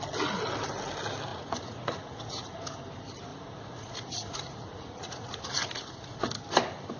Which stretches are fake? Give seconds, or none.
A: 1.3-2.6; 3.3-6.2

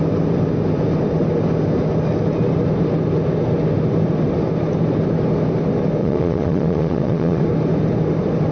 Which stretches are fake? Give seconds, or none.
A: 6.0-7.4

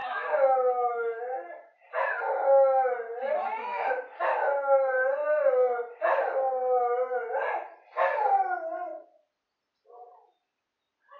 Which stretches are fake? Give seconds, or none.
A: 0.0-1.2; 3.7-4.2

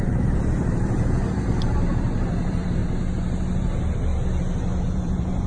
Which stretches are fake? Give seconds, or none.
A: 0.0-2.8; 3.6-4.1; 4.8-5.5

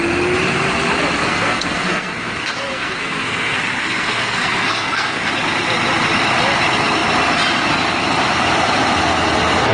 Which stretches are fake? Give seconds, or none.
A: 1.2-5.3